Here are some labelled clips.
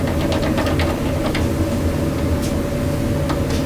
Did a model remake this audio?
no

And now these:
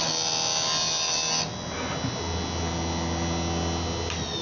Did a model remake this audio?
no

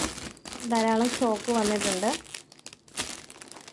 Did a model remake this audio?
no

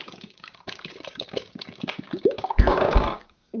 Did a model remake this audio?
yes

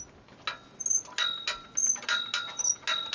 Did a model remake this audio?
no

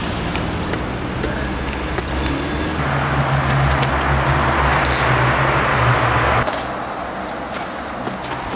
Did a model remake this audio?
no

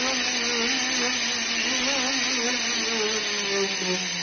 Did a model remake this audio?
no